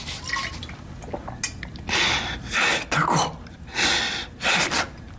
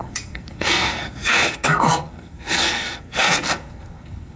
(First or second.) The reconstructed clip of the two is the second